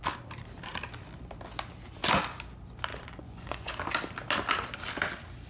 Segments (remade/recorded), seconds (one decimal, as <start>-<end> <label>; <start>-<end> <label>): 0.0-2.9 recorded; 2.9-3.7 remade; 3.7-5.5 recorded